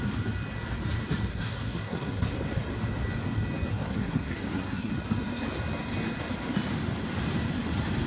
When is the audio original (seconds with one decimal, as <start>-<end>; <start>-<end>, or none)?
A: 0.0-1.3; 2.3-3.7; 4.9-8.1